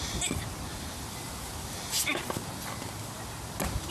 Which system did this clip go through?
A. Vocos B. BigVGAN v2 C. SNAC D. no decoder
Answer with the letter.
D